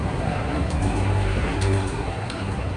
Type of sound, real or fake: fake